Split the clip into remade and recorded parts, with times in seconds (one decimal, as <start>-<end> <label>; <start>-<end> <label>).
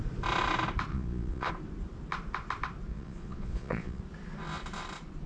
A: 0.0-0.9 recorded; 0.9-1.5 remade; 1.5-2.9 recorded; 2.9-4.0 remade; 4.0-5.3 recorded